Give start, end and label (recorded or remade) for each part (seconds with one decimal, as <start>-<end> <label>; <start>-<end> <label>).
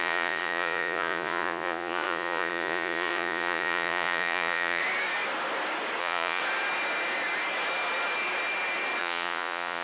0.0-4.8 remade; 4.8-6.0 recorded; 6.0-6.4 remade; 6.4-9.0 recorded; 9.0-9.8 remade